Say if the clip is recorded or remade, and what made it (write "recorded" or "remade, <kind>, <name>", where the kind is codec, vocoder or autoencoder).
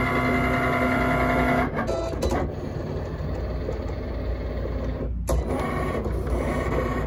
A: recorded